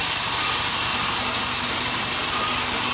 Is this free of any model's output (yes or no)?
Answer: yes